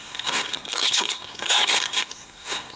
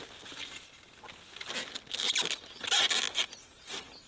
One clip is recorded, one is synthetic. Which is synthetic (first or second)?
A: first